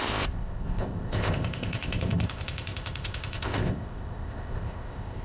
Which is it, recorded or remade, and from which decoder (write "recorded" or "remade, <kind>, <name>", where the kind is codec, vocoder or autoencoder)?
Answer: remade, codec, ZipCodec